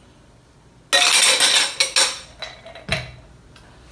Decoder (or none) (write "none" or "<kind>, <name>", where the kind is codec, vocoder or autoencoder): none